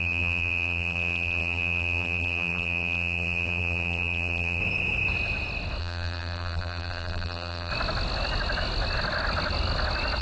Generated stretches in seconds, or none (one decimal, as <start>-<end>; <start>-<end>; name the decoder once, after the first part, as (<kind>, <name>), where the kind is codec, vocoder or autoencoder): 0.0-4.6 (vocoder, BigVGAN v2); 5.8-7.7